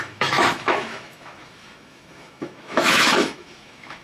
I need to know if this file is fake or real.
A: fake